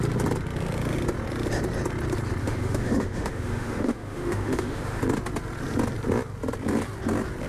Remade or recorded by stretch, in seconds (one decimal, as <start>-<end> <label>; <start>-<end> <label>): 0.0-2.4 recorded; 2.4-5.0 remade; 5.0-7.5 recorded